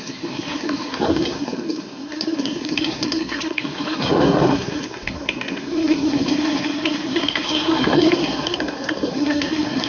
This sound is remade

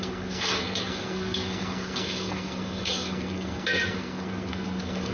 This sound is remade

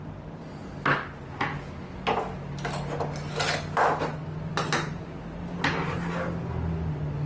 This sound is recorded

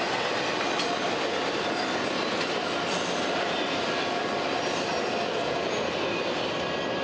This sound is recorded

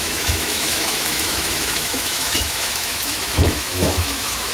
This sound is remade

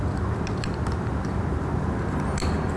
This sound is recorded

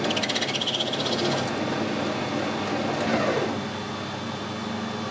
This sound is recorded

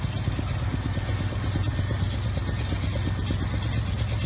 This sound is recorded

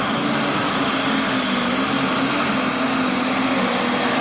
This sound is recorded